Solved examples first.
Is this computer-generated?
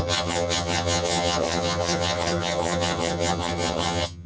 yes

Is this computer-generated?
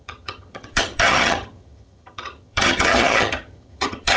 yes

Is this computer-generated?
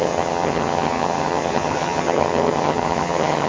yes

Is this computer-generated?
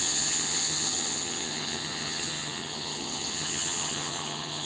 yes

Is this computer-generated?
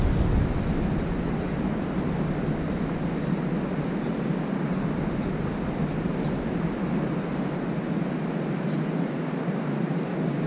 no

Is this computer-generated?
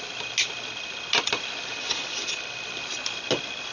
no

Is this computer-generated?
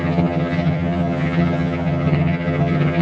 yes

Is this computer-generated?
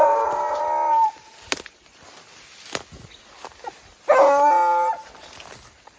no